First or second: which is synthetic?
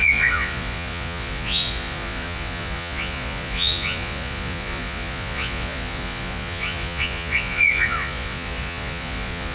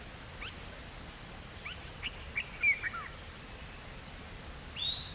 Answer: first